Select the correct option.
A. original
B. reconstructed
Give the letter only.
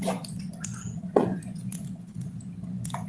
B